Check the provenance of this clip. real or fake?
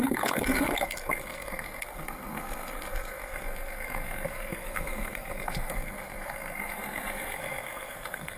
fake